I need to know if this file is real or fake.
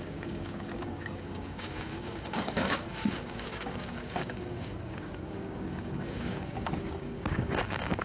fake